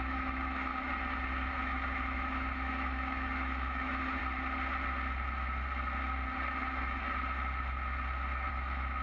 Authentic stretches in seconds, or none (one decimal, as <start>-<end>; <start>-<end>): 0.7-1.5; 4.2-8.5